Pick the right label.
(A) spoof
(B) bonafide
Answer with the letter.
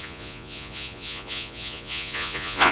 A